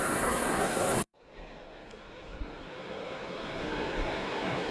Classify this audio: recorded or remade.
remade